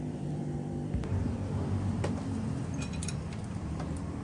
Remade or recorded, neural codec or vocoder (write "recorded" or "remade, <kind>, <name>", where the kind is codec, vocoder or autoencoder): remade, vocoder, BigVGAN v2